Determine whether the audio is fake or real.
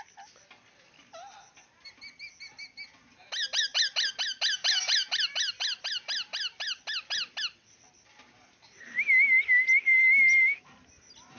real